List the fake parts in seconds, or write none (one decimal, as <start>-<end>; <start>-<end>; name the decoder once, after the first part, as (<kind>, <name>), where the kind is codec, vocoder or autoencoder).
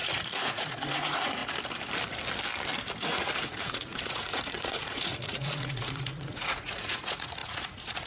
0.0-1.4 (vocoder, Vocos); 2.9-8.1